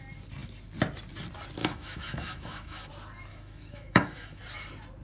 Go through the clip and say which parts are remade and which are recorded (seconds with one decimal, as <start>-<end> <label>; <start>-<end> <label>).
0.0-1.6 recorded; 1.6-2.9 remade; 2.9-3.3 recorded; 3.3-4.4 remade; 4.4-5.0 recorded